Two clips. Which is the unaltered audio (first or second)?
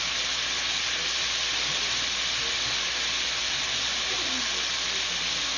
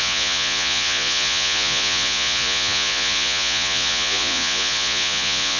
first